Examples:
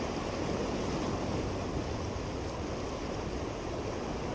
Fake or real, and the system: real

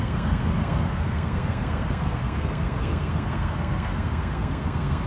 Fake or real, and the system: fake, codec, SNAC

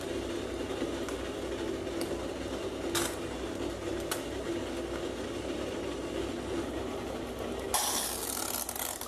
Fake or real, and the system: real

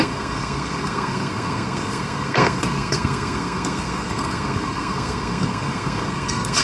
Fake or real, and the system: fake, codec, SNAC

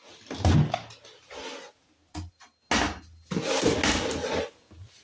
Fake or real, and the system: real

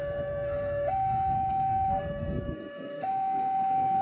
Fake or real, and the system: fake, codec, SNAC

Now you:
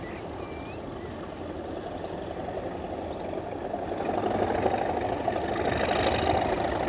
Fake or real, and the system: real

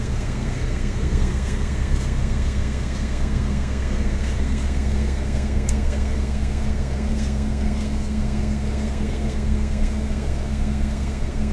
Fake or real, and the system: fake, codec, SNAC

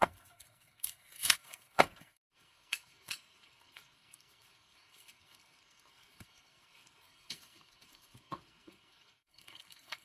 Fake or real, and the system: fake, codec, SNAC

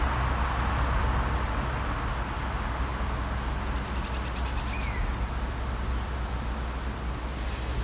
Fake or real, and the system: real